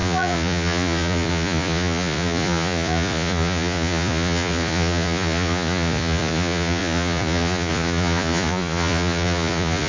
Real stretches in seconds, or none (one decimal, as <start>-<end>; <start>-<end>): none